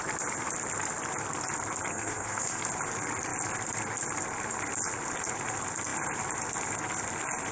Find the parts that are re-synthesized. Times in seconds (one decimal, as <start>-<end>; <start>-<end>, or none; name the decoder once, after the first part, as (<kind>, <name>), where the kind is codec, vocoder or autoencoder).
1.9-2.6 (codec, SNAC)